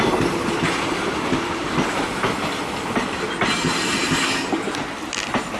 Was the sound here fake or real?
real